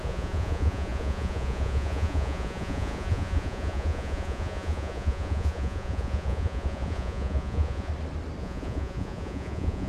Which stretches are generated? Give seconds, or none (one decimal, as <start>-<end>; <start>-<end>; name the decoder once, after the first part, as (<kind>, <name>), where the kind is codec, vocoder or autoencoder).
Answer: 0.0-7.9 (vocoder, Vocos); 8.4-9.9